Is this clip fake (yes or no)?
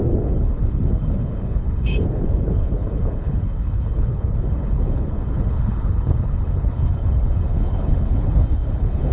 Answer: yes